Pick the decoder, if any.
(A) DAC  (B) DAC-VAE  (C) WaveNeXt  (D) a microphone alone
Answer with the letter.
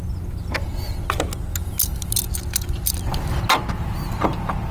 D